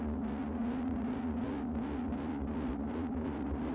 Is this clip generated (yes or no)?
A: yes